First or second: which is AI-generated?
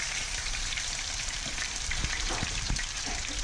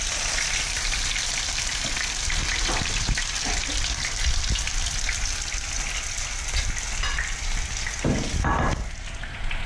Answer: first